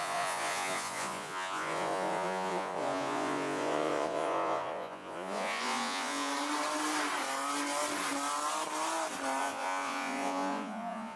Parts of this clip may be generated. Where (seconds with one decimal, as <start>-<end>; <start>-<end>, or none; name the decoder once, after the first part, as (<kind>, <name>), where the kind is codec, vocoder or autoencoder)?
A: 0.0-6.3 (vocoder, Vocos); 9.4-11.2